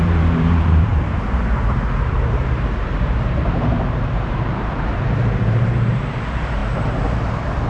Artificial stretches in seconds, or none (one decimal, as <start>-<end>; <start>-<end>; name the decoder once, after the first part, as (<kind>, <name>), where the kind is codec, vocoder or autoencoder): 0.0-7.7 (vocoder, BigVGAN v2)

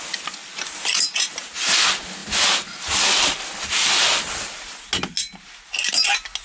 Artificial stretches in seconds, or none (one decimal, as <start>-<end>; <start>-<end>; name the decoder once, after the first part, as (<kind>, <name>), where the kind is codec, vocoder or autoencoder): 0.5-1.7 (vocoder, BigVGAN v2); 2.2-4.3